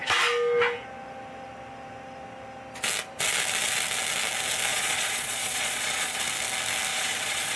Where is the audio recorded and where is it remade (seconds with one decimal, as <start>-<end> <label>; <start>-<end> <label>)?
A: 0.0-4.7 recorded; 4.7-6.2 remade; 6.2-6.9 recorded; 6.9-7.6 remade